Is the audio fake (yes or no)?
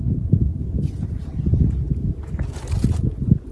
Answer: no